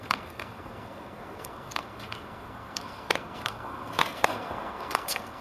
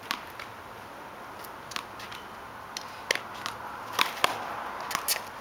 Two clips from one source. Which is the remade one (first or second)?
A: first